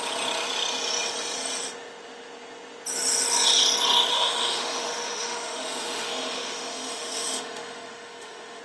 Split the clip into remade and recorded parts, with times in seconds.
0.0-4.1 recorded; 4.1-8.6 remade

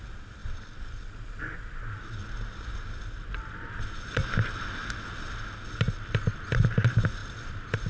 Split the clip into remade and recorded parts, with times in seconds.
0.0-7.2 recorded; 7.2-7.9 remade